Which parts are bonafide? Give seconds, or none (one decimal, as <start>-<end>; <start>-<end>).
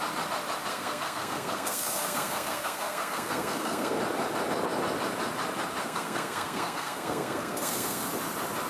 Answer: 0.0-0.7; 4.0-5.8; 8.1-8.7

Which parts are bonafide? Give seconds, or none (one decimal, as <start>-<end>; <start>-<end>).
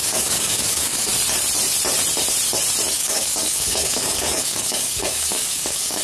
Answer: 1.1-2.9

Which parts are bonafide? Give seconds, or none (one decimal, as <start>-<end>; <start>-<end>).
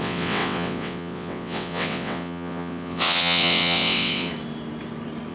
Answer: 4.3-5.3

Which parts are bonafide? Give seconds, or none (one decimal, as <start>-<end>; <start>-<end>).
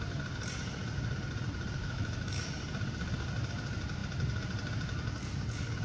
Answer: 0.0-1.8; 2.4-5.8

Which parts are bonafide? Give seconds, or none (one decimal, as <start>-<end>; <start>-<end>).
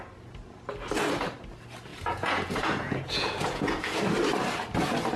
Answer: 0.0-1.9; 4.0-5.2